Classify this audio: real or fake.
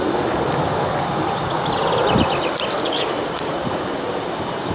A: real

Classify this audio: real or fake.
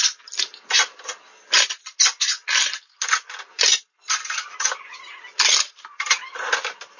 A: real